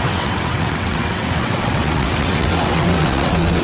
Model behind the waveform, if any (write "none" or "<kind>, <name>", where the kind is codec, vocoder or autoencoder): vocoder, WaveNeXt